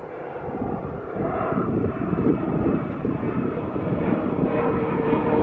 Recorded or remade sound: remade